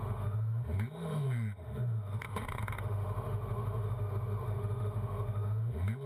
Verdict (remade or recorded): remade